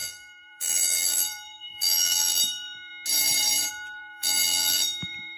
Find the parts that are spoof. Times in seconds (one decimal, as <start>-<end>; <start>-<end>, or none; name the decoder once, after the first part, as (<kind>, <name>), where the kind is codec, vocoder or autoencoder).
0.0-2.9 (vocoder, BigVGAN v2); 3.7-5.4